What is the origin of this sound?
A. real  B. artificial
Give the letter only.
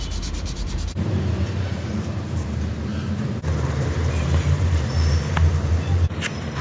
B